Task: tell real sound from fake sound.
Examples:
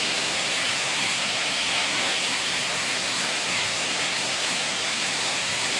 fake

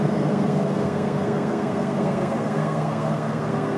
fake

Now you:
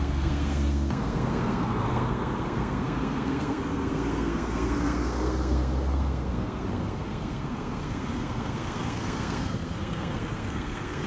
fake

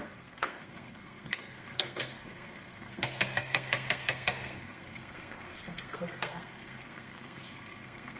fake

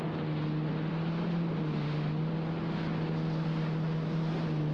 real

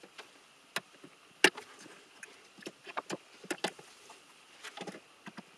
real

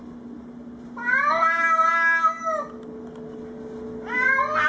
real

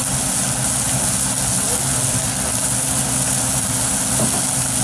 real